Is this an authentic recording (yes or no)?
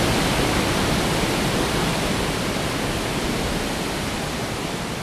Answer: yes